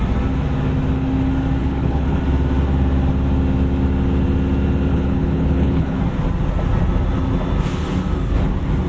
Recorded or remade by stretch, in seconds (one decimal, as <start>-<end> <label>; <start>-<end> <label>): 0.0-1.6 recorded; 1.6-2.2 remade; 2.2-4.9 recorded; 4.9-6.0 remade; 6.0-8.9 recorded